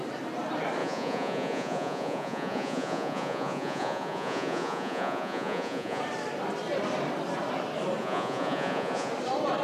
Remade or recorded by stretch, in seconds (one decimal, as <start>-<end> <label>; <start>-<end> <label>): 0.0-0.8 recorded; 0.8-6.0 remade; 6.0-8.0 recorded; 8.0-9.1 remade; 9.1-9.6 recorded